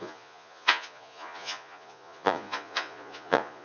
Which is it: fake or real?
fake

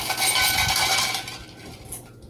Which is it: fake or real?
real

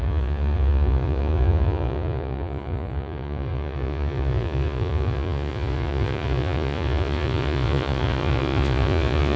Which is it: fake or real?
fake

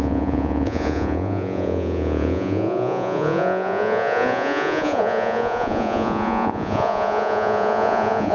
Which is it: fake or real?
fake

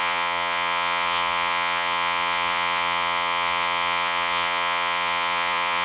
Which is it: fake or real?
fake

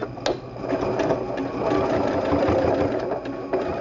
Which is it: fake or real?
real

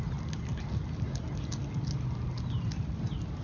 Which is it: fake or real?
real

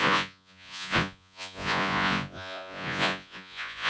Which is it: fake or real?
fake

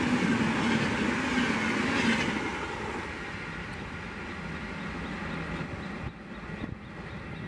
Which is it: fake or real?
real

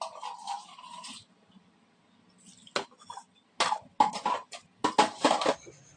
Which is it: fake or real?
real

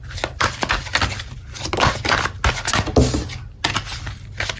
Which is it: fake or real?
real